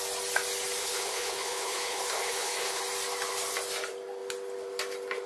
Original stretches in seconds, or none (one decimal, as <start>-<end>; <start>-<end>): 0.0-0.8; 2.8-5.3